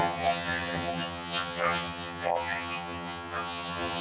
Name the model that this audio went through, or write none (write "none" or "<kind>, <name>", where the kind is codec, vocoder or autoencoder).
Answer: vocoder, HiFi-GAN